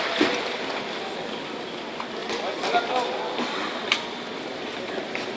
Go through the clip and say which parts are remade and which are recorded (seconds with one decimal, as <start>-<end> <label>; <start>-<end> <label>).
0.0-5.4 recorded